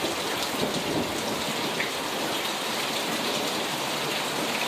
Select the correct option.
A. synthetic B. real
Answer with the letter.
B